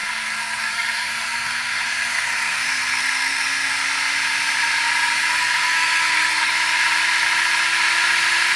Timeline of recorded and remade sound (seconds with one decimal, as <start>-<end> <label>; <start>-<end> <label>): 0.0-3.7 remade; 3.7-5.4 recorded; 5.4-6.5 remade; 6.5-8.6 recorded